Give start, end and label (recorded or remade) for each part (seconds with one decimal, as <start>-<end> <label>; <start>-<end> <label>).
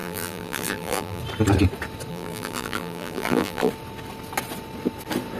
0.0-1.2 remade; 1.2-2.1 recorded; 2.1-3.7 remade; 3.7-5.4 recorded